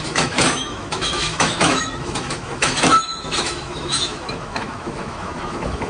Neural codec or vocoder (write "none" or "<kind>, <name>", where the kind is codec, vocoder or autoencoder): autoencoder, DAC-VAE